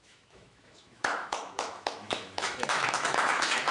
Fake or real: fake